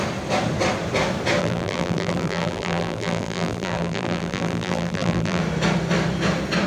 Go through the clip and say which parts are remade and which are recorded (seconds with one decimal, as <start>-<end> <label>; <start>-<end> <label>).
0.0-1.4 recorded; 1.4-5.4 remade; 5.4-6.7 recorded